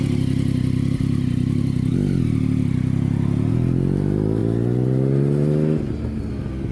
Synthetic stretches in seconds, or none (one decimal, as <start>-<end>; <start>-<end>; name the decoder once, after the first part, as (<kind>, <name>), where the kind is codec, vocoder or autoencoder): none